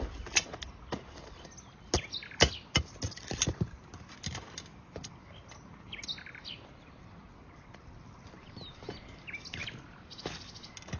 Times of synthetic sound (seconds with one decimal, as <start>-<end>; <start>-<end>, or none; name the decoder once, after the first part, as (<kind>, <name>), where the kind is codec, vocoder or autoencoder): none